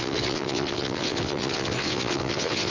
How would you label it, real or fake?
fake